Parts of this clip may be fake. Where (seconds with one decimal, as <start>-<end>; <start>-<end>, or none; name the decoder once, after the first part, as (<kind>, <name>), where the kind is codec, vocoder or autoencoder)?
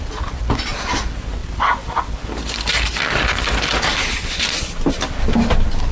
1.4-4.9 (vocoder, BigVGAN v2)